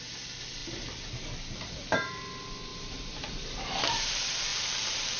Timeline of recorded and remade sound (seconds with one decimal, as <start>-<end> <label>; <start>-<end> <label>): 0.0-0.6 recorded; 0.6-2.2 remade; 2.2-2.7 recorded; 2.7-4.1 remade; 4.1-4.5 recorded; 4.5-5.2 remade